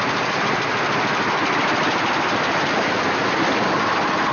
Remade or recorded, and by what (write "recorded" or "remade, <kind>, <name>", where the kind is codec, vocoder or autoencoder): recorded